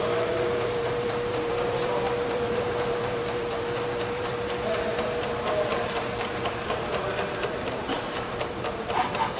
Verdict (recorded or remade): remade